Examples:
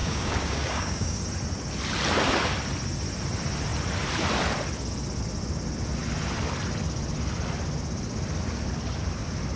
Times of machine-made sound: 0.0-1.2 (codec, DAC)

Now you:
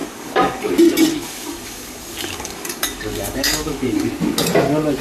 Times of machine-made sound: 0.0-0.7 (codec, DAC); 1.1-4.1

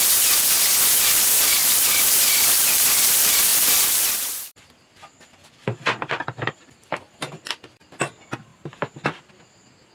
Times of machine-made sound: 3.5-6.7 (vocoder, BigVGAN v2)

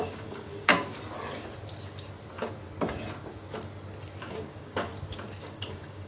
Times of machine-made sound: 0.0-0.7 (codec, DAC); 4.2-4.9; 5.4-6.1

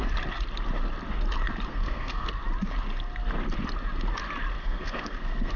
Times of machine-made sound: 1.7-2.3 (codec, SNAC); 4.6-5.6

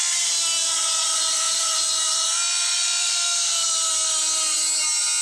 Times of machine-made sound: 0.6-3.1 (vocoder, Vocos)

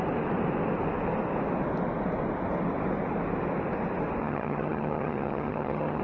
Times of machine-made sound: 4.2-6.0 (vocoder, HiFi-GAN)

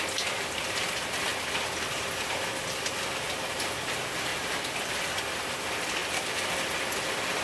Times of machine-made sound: 1.3-2.9 (vocoder, BigVGAN v2); 4.3-5.2; 6.0-6.5